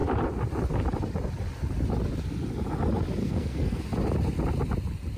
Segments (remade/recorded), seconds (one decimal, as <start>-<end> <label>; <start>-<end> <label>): 0.0-3.2 recorded; 3.2-3.8 remade; 3.8-5.2 recorded